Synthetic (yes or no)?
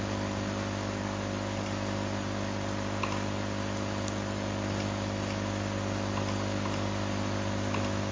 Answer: no